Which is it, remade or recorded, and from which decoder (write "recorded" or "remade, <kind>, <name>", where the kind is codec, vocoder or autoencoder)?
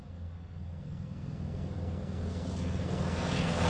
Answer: remade, codec, SNAC